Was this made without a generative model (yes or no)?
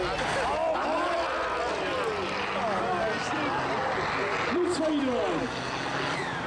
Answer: yes